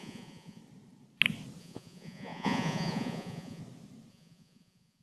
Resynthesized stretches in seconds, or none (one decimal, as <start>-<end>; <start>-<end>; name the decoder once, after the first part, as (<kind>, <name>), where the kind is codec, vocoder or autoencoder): 0.0-0.6 (vocoder, Vocos); 1.6-3.6; 4.1-5.0